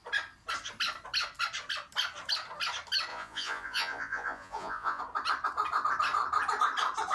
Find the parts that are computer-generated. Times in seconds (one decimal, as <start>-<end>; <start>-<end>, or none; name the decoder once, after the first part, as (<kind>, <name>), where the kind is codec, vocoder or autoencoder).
3.1-5.0 (vocoder, Vocos)